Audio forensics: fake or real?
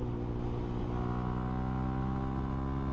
real